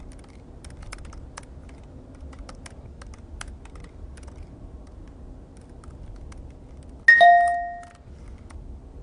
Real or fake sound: real